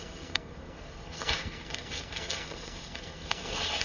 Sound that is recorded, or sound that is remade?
remade